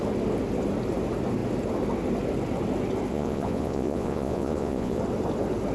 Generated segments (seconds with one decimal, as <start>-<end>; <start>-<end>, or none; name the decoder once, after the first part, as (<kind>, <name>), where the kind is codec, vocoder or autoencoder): 3.1-5.0 (vocoder, Vocos)